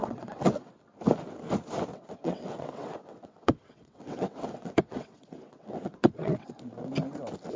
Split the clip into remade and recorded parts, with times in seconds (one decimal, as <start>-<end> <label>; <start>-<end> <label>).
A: 0.0-0.7 remade; 0.7-1.9 recorded; 1.9-6.5 remade; 6.5-7.6 recorded